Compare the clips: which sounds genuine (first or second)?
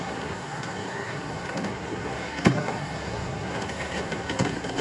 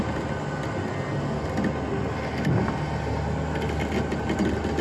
second